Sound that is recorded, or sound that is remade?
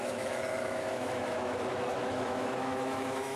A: remade